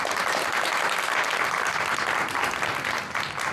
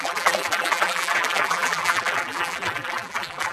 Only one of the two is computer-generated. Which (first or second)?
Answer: second